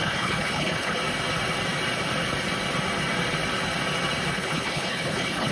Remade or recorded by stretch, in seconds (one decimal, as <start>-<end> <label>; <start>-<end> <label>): 0.0-1.0 remade; 1.0-4.3 recorded; 4.3-5.5 remade